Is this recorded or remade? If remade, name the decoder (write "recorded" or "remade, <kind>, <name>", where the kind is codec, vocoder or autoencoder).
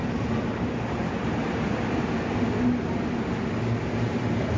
recorded